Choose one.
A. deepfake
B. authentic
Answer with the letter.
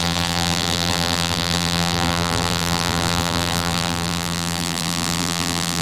A